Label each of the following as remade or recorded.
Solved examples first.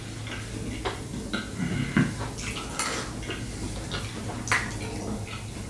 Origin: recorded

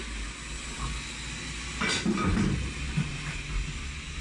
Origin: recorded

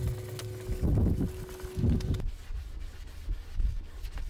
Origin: recorded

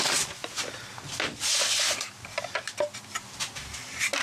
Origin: recorded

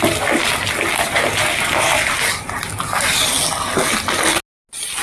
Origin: recorded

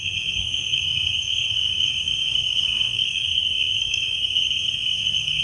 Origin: remade